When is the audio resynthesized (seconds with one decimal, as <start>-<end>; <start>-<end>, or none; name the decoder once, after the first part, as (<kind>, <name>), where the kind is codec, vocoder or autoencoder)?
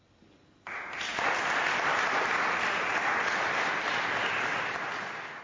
none